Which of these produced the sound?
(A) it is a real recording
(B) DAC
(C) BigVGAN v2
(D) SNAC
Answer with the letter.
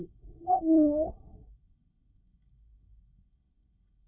D